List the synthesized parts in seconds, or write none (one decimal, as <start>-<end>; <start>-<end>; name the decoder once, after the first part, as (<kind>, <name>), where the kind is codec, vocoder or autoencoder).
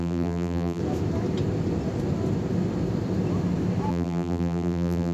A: 0.0-0.8 (vocoder, BigVGAN v2); 3.9-5.1